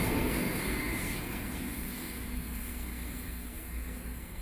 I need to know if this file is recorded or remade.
remade